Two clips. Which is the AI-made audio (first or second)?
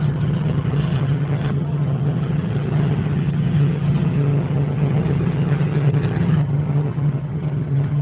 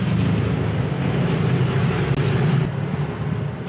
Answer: first